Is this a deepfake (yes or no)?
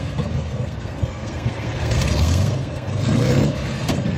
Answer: yes